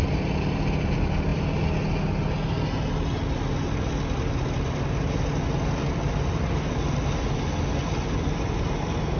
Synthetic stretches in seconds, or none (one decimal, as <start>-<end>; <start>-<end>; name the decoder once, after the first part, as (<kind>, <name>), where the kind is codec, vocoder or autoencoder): none